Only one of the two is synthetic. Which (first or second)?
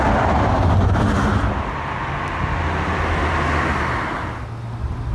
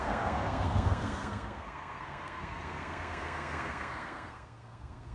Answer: second